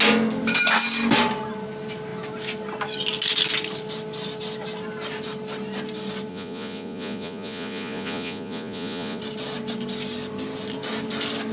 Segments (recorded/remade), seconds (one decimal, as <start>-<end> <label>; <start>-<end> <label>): 0.0-6.3 recorded; 6.3-9.2 remade; 9.2-11.5 recorded